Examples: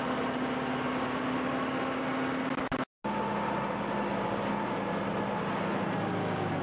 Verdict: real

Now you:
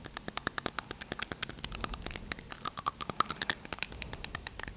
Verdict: real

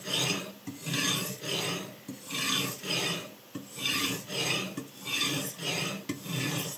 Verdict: real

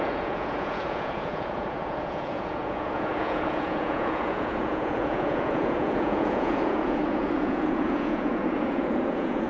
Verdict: fake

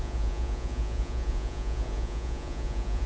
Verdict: fake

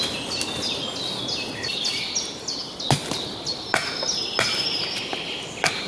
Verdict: real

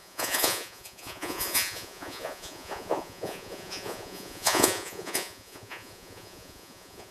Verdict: fake